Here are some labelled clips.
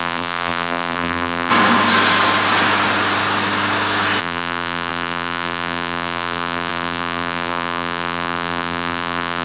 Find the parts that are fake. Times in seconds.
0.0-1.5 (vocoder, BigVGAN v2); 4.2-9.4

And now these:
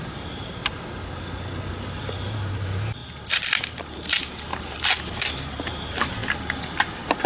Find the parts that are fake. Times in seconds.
0.0-0.6 (vocoder, BigVGAN v2); 1.7-6.2

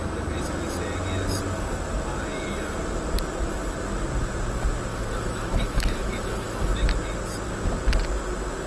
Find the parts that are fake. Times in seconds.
4.9-6.7 (autoencoder, DAC-VAE)

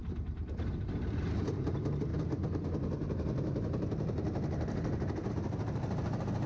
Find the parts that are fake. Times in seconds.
0.0-6.5 (vocoder, BigVGAN v2)

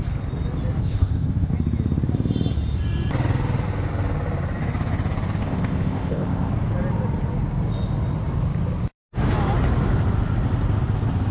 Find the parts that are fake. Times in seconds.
0.8-1.5 (codec, ZipCodec); 5.4-6.5